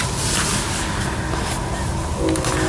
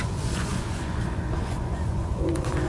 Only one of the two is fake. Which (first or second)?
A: second